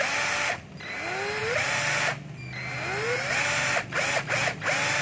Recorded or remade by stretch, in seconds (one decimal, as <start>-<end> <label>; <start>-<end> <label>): 0.0-5.0 recorded